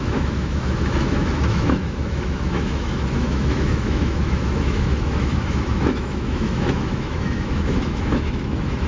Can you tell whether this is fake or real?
fake